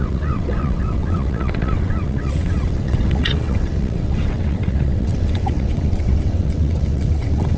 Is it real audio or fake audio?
fake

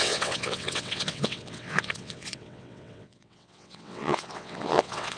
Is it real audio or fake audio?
fake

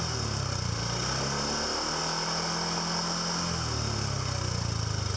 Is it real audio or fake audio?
real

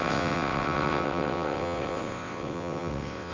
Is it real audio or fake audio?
fake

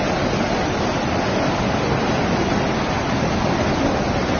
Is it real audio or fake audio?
real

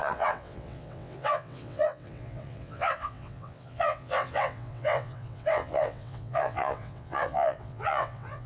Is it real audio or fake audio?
fake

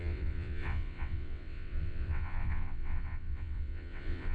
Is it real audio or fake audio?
fake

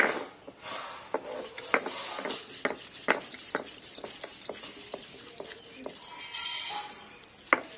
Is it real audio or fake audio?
real